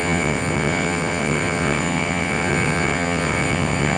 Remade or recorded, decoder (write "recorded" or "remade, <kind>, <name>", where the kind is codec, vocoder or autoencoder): remade, vocoder, WaveNeXt